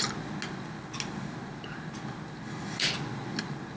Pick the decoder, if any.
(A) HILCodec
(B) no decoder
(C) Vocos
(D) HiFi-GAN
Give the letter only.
B